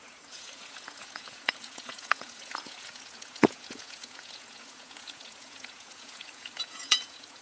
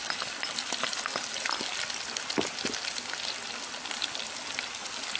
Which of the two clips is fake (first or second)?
first